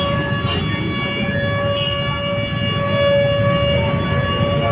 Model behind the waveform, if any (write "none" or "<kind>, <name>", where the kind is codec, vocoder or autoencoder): none